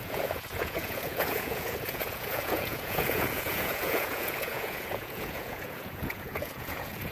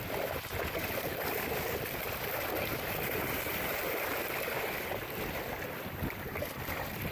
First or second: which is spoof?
first